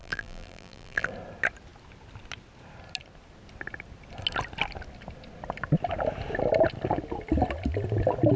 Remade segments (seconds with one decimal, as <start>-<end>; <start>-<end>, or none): 0.0-1.1